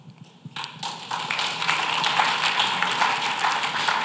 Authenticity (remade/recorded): recorded